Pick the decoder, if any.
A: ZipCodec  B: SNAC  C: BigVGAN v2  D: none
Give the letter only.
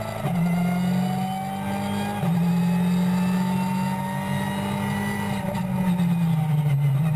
D